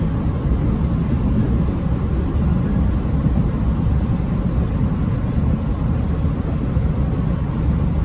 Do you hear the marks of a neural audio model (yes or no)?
no